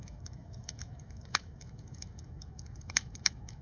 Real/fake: fake